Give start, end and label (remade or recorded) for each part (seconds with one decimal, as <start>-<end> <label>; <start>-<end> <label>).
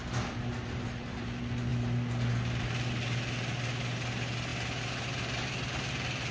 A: 0.0-6.3 recorded